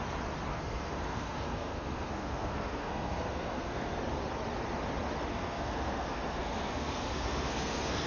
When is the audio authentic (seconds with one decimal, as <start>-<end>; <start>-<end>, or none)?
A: 0.0-0.5; 4.0-5.3